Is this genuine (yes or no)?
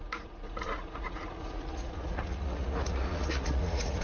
no